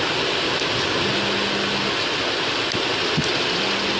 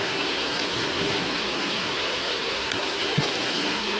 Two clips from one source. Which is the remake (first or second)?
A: second